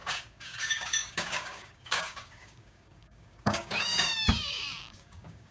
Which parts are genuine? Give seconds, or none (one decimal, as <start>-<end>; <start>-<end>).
none